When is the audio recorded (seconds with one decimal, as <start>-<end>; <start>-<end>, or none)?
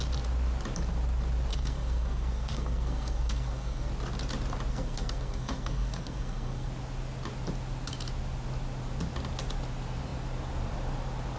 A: 0.0-1.5; 3.9-4.7; 6.7-11.4